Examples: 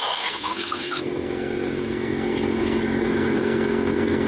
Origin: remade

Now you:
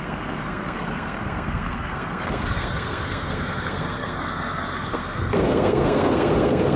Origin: remade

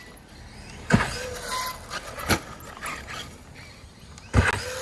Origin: recorded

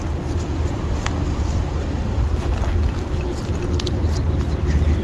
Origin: recorded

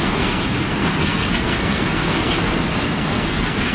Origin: remade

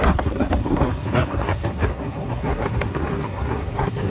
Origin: remade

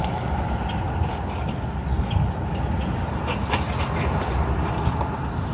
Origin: recorded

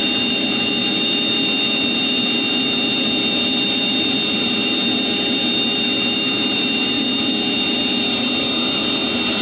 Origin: recorded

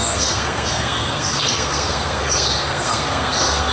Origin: remade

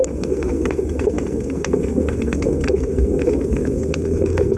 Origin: remade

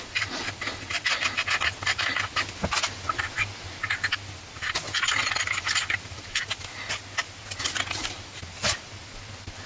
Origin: recorded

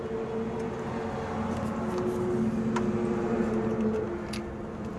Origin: recorded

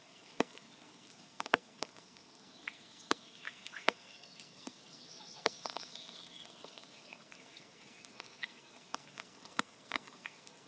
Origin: remade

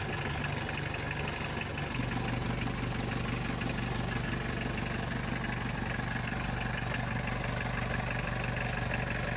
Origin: recorded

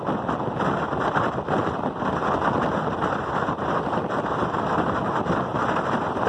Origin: recorded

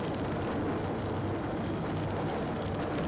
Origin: recorded